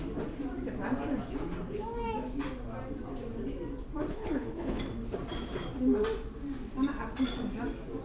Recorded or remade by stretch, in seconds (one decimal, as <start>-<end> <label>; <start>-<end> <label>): 0.0-4.1 recorded; 4.1-4.8 remade; 4.8-8.0 recorded